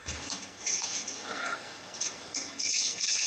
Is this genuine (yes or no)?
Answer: no